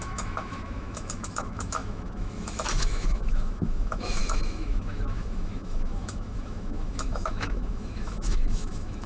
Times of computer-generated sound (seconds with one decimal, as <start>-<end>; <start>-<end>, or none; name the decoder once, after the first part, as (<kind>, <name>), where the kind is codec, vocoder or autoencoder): 0.0-9.1 (autoencoder, DAC-VAE)